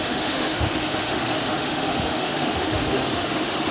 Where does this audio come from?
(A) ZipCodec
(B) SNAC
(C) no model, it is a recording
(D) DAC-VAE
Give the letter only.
D